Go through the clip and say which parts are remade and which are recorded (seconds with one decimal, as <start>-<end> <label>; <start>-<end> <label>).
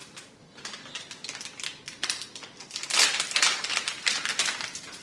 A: 0.0-3.5 recorded; 3.5-5.0 remade